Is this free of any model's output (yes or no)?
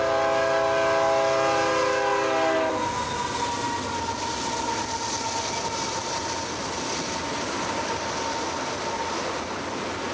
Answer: yes